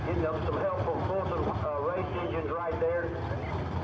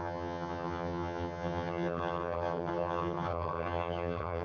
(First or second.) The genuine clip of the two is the first